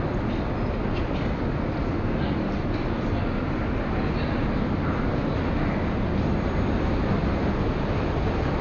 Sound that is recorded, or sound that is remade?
recorded